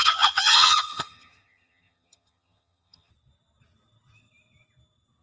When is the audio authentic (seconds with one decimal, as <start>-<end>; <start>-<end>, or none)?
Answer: 3.1-5.2